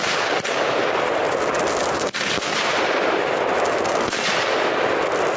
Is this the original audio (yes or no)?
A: yes